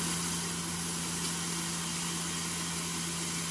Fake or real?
real